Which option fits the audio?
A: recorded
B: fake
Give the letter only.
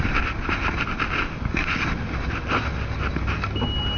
A